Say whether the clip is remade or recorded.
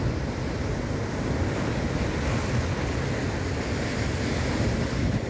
recorded